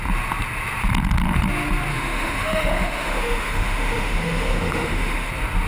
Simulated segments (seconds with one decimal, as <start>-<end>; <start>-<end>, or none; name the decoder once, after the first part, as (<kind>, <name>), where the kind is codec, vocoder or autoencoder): 1.9-5.3 (autoencoder, DAC-VAE)